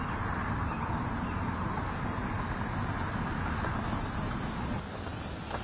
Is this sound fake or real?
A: real